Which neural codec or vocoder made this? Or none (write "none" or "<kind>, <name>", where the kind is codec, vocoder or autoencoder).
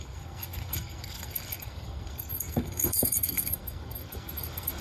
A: codec, SNAC